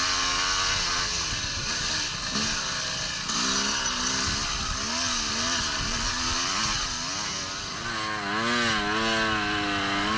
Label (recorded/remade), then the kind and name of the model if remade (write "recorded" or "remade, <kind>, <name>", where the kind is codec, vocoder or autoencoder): recorded